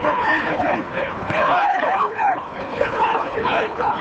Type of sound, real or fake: fake